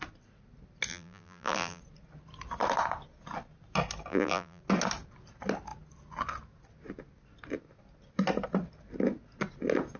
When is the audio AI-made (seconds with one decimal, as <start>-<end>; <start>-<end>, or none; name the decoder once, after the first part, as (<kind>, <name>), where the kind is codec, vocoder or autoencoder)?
0.9-1.8 (vocoder, BigVGAN v2); 4.1-4.6